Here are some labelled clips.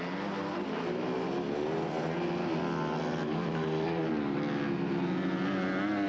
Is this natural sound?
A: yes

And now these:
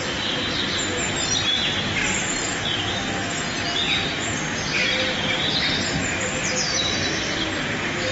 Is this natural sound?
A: yes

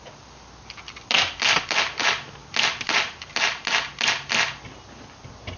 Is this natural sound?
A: yes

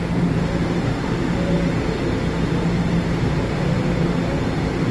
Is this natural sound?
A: no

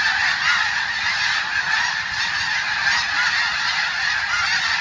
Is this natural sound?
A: yes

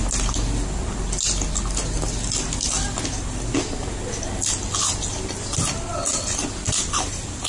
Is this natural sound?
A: yes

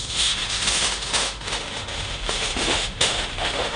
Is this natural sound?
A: no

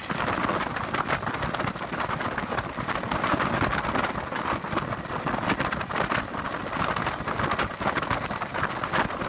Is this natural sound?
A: yes